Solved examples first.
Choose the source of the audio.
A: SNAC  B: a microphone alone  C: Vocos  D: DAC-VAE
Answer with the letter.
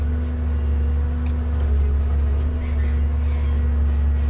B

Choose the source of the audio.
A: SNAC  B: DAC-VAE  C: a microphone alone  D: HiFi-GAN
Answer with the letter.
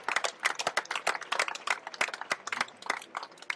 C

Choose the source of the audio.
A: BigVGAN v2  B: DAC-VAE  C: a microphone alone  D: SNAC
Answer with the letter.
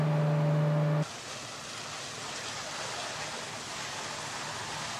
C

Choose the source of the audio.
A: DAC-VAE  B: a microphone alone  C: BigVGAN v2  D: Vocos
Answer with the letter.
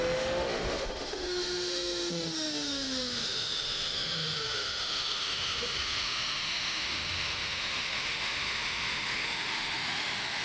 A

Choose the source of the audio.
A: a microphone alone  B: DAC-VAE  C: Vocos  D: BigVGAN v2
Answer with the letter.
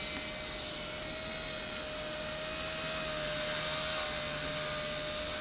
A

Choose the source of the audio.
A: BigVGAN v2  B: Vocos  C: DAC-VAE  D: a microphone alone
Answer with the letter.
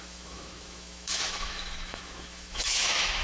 C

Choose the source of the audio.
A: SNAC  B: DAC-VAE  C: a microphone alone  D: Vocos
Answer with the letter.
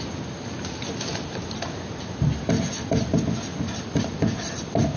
C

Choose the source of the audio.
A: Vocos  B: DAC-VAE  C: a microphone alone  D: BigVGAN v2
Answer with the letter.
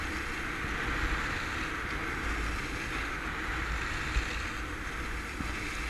C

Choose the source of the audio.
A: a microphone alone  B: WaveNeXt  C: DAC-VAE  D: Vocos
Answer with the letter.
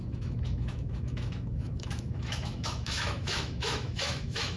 C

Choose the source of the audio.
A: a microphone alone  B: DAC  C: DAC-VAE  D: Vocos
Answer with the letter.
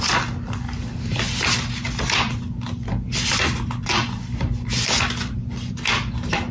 A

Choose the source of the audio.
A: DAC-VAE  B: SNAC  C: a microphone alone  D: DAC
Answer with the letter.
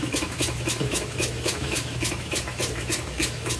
A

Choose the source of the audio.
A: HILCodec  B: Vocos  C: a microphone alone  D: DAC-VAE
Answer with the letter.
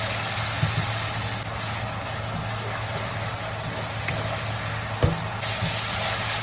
C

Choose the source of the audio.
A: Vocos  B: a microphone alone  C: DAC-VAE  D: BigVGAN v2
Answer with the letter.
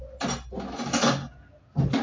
B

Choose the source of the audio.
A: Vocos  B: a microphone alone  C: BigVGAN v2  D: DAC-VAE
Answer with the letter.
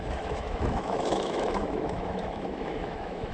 D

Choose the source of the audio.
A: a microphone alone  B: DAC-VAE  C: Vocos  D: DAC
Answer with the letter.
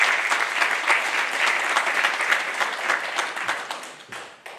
A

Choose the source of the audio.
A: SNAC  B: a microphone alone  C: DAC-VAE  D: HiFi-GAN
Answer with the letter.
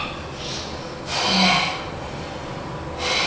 B